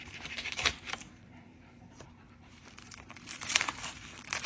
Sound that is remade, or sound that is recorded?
remade